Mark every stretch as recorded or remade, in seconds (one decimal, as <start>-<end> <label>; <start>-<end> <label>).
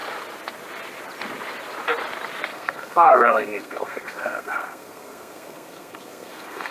0.0-2.5 recorded; 2.5-6.7 remade